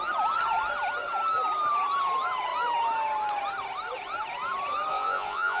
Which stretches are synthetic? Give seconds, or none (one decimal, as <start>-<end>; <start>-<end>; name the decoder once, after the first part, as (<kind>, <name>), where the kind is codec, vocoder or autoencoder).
4.9-5.6 (vocoder, Vocos)